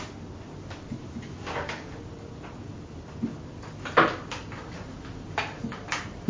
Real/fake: real